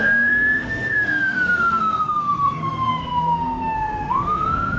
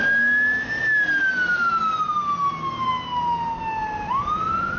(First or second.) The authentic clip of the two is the second